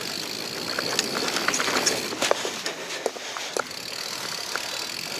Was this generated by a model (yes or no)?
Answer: no